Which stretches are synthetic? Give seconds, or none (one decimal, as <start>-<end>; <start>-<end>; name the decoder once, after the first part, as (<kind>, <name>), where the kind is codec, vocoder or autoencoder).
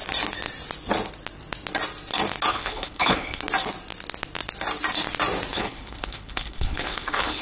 2.5-3.4 (codec, HILCodec); 5.5-7.4